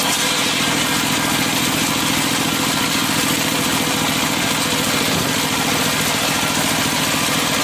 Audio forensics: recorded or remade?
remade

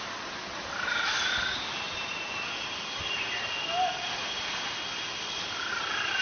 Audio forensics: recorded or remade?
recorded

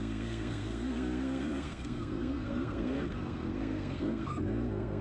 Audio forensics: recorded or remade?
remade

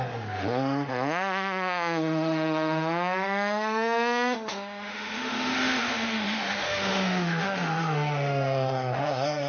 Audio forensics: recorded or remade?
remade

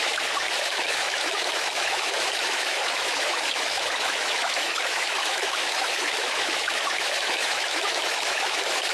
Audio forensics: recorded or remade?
remade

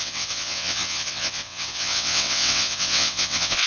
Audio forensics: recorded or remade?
remade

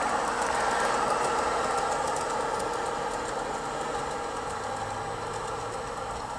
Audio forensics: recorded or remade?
recorded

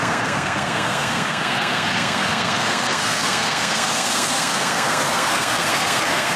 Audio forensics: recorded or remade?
remade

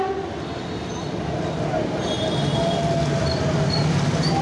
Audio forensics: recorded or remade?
recorded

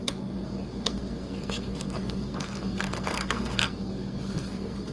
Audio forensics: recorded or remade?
remade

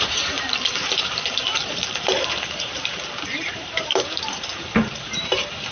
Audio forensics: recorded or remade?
remade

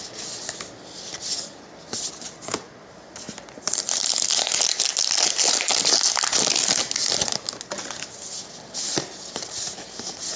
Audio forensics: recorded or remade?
recorded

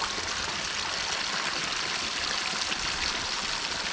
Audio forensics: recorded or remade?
recorded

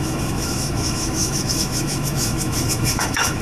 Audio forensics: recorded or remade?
remade